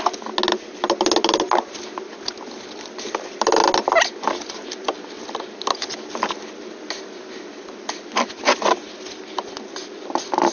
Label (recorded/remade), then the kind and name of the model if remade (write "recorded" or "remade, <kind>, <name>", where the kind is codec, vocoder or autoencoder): recorded